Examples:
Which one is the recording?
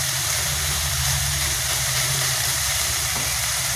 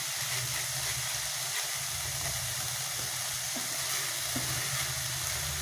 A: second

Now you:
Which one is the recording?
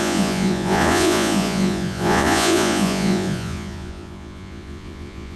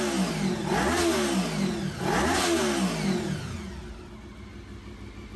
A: second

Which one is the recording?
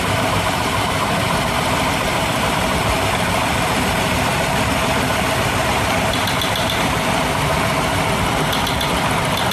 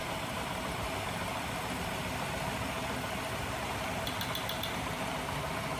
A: second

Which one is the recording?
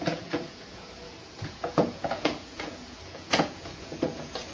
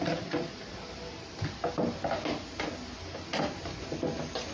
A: second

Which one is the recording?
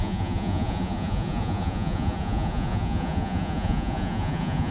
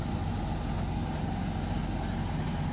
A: second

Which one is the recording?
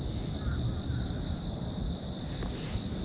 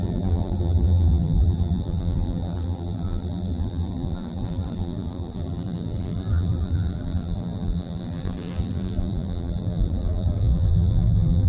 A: first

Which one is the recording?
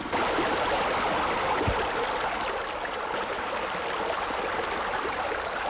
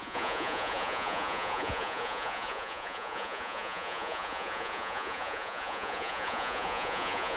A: first